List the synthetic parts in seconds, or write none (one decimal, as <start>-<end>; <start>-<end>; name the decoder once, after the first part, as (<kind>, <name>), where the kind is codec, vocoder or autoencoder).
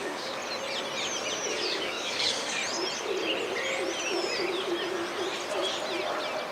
0.0-0.4 (codec, DAC); 1.5-2.6